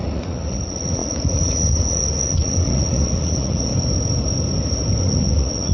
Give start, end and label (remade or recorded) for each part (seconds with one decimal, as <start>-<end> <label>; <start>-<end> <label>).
0.0-3.7 remade; 3.7-5.0 recorded; 5.0-5.7 remade